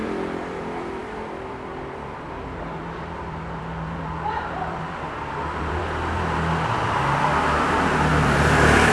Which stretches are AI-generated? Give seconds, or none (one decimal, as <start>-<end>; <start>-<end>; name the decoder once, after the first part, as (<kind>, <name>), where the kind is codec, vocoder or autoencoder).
0.0-8.9 (vocoder, BigVGAN v2)